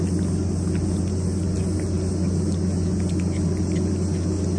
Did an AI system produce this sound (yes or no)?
no